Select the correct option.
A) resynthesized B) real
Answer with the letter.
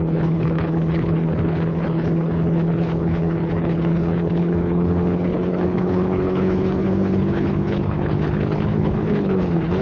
A